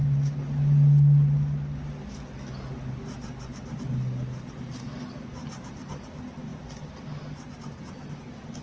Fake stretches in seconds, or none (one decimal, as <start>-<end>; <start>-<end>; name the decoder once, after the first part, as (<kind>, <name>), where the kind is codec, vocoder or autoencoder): none